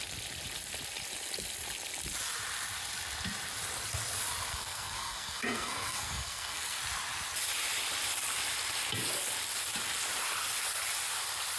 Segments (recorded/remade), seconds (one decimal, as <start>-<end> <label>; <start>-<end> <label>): 0.0-4.5 recorded; 4.5-6.8 remade; 6.8-11.6 recorded